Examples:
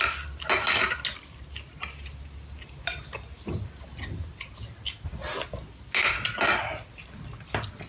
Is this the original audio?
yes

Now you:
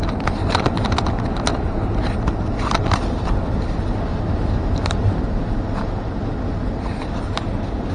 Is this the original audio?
yes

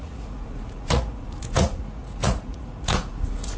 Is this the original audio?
no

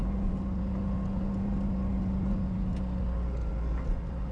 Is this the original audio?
yes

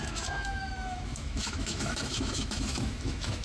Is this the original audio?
no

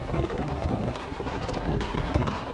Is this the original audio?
no